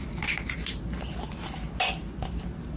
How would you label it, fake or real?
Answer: real